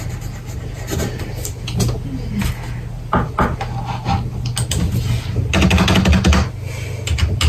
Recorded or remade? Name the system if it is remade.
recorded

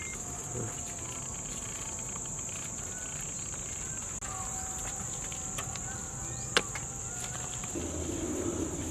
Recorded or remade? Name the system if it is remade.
recorded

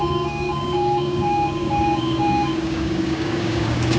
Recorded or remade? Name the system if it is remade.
remade, codec, DAC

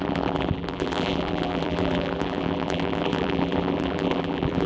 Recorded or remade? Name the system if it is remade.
remade, vocoder, BigVGAN v2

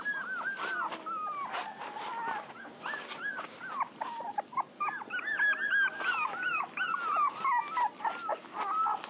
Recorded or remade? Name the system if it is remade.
recorded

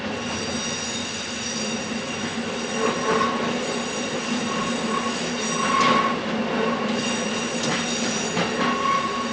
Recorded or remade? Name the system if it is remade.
recorded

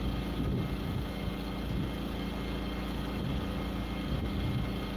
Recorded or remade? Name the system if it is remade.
recorded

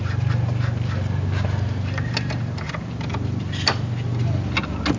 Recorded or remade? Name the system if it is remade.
recorded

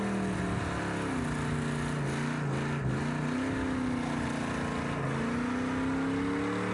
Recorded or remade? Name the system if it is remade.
recorded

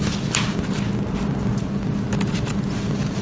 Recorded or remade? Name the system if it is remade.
recorded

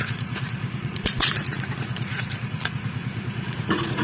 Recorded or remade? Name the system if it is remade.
remade, vocoder, Vocos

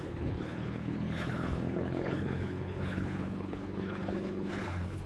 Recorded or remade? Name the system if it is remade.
remade, codec, HILCodec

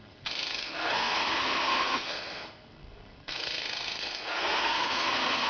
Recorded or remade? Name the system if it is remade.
remade, codec, SNAC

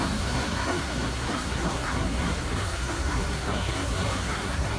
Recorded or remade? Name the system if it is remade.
remade, codec, SNAC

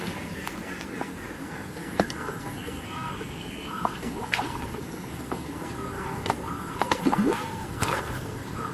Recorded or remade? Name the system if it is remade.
remade, codec, SNAC